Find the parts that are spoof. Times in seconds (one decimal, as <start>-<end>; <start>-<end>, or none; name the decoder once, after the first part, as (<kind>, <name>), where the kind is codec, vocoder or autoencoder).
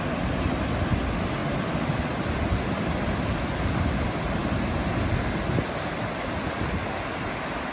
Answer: none